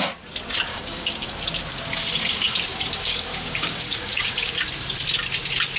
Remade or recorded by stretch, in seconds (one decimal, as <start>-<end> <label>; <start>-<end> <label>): 0.0-0.7 recorded; 0.7-1.4 remade; 1.4-2.7 recorded; 2.7-4.5 remade; 4.5-5.8 recorded

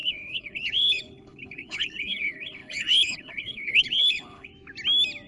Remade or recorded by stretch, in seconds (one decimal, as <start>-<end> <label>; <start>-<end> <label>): 0.0-4.5 remade; 4.5-5.3 recorded